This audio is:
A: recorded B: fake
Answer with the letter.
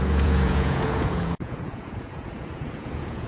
B